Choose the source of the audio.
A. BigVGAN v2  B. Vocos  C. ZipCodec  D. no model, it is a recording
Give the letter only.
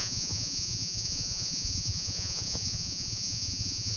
B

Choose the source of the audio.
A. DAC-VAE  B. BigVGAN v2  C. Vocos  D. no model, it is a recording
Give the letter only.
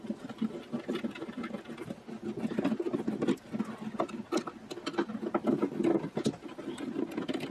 D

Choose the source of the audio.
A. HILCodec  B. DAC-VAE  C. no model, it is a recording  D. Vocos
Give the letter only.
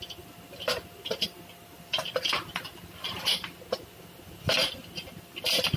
C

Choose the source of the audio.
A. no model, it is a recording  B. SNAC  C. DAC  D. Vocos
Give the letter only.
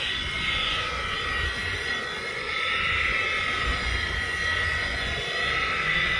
D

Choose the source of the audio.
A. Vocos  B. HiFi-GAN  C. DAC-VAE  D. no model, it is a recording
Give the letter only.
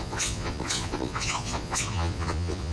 A